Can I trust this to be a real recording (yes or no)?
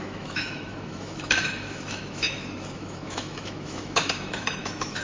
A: no